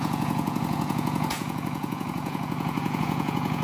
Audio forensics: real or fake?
fake